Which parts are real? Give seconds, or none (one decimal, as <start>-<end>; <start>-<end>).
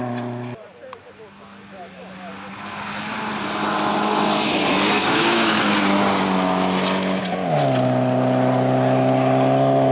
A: 0.0-5.0; 5.6-9.9